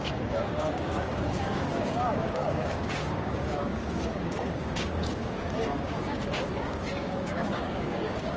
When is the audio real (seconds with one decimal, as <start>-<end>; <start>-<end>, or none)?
none

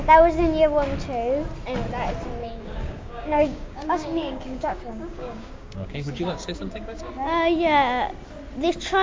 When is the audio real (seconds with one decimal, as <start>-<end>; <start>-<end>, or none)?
0.0-2.4; 7.1-9.0

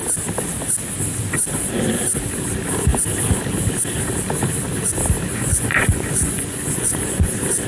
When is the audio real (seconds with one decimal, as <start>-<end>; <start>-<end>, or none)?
0.0-5.3; 7.3-7.7